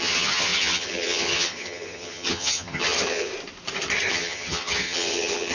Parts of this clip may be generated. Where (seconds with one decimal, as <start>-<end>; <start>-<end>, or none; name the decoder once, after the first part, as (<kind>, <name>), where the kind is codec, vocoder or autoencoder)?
0.0-3.3 (vocoder, HiFi-GAN); 4.1-5.5

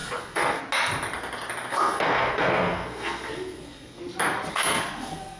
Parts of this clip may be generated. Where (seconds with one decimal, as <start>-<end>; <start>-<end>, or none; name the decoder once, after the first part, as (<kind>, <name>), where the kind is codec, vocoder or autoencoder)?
0.0-0.6 (codec, SNAC); 1.7-4.0; 4.5-5.4